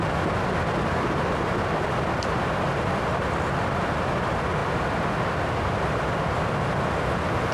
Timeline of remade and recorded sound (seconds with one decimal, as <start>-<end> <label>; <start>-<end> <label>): 0.0-7.5 recorded